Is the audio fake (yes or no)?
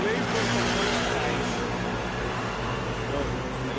no